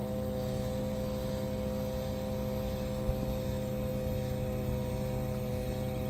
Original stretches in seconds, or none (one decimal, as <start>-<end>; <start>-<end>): 0.0-6.1